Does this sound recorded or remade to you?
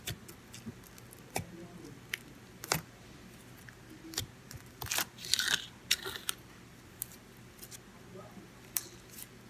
recorded